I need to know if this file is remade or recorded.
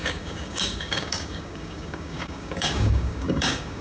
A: remade